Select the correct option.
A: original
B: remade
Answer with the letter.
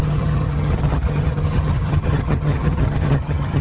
B